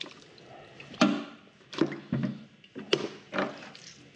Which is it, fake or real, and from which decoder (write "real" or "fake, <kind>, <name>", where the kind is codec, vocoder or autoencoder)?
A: real